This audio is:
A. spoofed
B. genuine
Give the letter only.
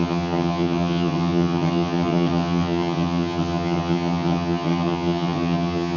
A